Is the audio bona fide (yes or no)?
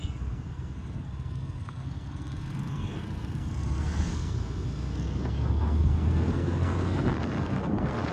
no